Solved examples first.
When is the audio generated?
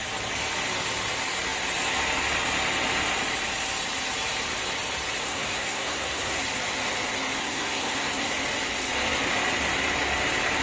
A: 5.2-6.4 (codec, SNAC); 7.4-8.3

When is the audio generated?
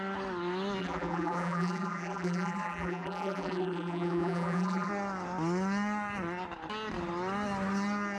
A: 0.8-4.9 (vocoder, BigVGAN v2)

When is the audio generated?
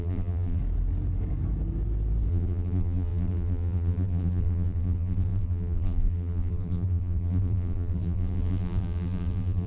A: 0.0-0.6 (vocoder, BigVGAN v2); 2.3-9.7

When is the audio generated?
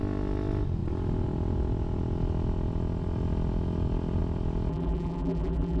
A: 4.7-5.8 (vocoder, BigVGAN v2)